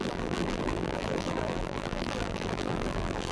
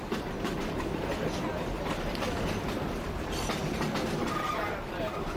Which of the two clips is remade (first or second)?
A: first